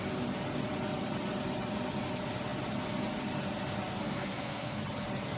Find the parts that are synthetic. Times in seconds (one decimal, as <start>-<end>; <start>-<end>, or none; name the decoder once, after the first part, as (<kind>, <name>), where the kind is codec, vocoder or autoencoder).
3.9-4.8 (codec, SNAC)